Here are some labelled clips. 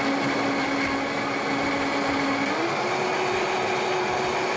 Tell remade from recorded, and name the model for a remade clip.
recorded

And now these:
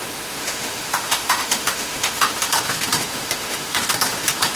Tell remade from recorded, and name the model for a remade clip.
remade, autoencoder, DAC-VAE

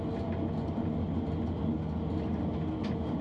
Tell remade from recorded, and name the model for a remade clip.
recorded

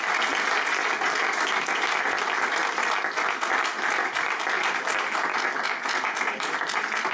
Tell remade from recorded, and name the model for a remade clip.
recorded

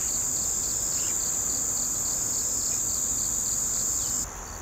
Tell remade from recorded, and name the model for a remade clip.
recorded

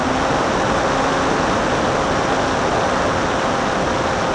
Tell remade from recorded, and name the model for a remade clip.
recorded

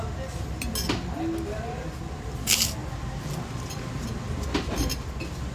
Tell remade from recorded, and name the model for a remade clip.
recorded